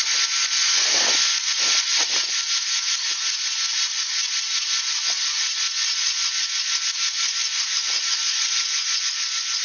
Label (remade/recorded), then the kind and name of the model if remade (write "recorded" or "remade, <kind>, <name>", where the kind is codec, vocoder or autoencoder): recorded